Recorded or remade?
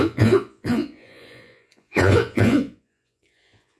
remade